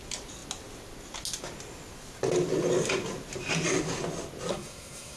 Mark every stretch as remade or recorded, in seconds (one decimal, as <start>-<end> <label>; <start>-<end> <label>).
0.0-4.5 recorded; 4.5-5.2 remade